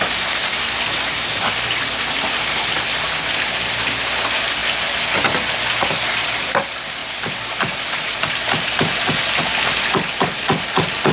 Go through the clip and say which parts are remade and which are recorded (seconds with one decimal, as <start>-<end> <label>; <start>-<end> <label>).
0.0-11.1 recorded

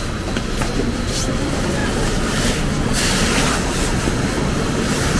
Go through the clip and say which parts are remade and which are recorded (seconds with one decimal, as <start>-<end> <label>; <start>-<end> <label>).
0.0-5.2 recorded

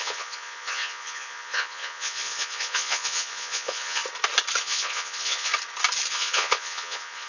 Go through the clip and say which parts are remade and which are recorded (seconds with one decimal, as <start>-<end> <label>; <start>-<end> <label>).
0.0-4.0 remade; 4.0-4.6 recorded; 4.6-5.5 remade; 5.5-6.1 recorded; 6.1-7.3 remade

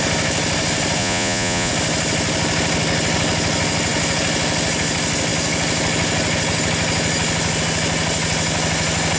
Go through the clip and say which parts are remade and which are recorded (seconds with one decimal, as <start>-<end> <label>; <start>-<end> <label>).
0.0-1.0 recorded; 1.0-1.7 remade; 1.7-9.2 recorded